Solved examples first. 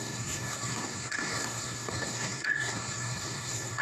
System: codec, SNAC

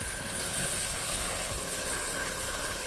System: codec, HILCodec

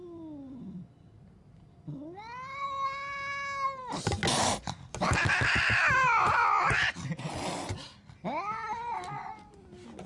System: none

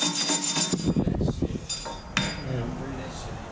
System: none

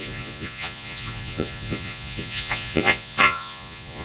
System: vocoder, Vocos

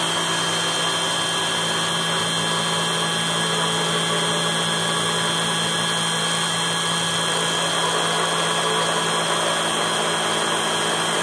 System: none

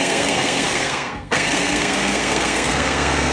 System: codec, SNAC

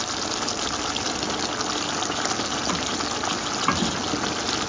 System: none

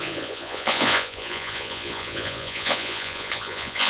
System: vocoder, Vocos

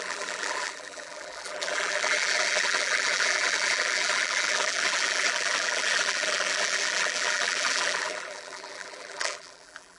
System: vocoder, BigVGAN v2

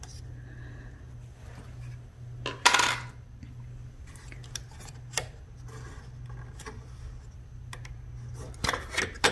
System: none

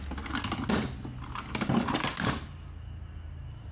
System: none